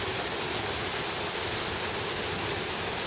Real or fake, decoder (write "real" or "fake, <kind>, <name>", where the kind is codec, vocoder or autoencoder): real